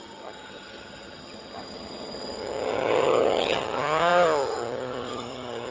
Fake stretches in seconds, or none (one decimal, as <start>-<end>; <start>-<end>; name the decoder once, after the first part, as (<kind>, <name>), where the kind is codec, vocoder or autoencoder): 0.0-5.7 (vocoder, HiFi-GAN)

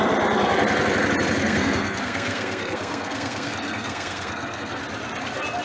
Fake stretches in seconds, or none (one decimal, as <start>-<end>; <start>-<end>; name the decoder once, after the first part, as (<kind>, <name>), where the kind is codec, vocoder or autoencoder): 1.4-4.8 (codec, SNAC)